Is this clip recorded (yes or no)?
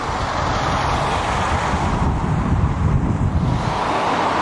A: yes